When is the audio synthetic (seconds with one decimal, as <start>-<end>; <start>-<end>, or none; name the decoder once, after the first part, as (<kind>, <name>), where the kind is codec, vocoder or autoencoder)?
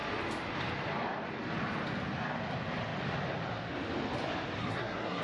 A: 4.6-5.2 (codec, SNAC)